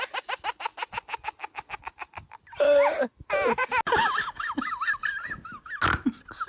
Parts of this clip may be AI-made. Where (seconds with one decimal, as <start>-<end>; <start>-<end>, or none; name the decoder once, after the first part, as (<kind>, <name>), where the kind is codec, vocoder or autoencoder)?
none